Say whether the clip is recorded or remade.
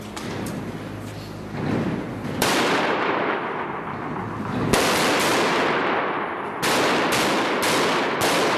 recorded